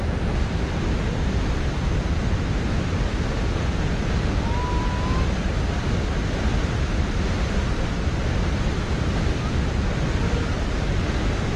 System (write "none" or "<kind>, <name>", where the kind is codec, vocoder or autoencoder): none